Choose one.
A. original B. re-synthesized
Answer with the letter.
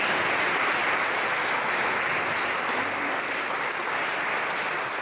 A